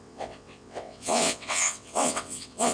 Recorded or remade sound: remade